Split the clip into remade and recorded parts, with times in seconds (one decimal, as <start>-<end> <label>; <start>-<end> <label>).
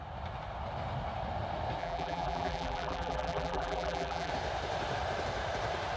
0.0-1.8 recorded; 1.8-4.3 remade; 4.3-6.0 recorded